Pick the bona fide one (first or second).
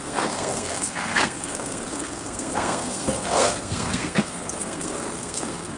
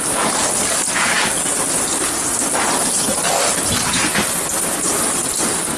second